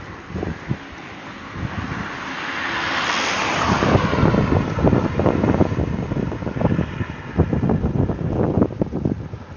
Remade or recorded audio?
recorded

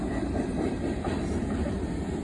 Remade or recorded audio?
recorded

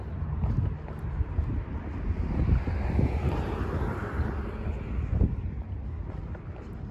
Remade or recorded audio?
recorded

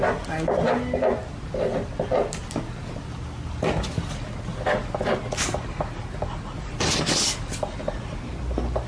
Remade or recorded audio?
recorded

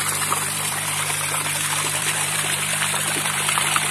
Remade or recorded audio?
remade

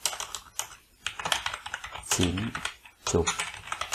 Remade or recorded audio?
recorded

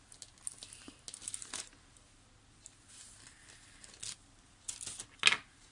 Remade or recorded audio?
recorded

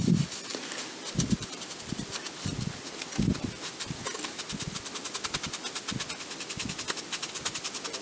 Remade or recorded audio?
remade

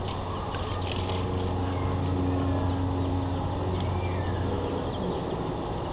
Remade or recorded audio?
recorded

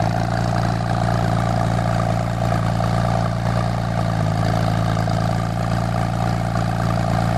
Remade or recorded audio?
recorded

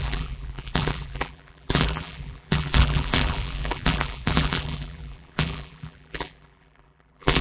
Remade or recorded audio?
remade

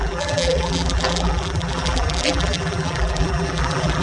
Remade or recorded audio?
remade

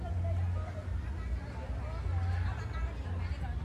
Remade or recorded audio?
recorded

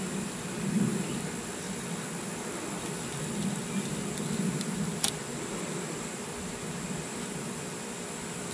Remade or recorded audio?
recorded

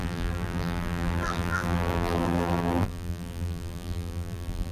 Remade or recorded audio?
remade